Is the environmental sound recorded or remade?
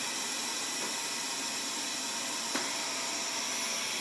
recorded